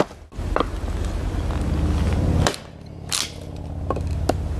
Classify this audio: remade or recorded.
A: recorded